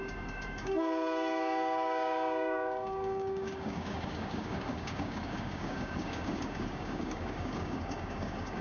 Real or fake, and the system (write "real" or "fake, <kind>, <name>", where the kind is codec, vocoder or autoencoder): fake, codec, DAC